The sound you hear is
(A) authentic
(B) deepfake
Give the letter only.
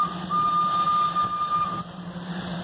A